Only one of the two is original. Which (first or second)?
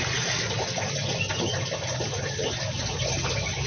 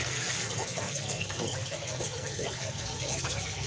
first